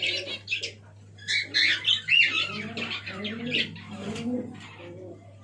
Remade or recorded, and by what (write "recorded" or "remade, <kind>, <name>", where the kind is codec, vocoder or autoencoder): recorded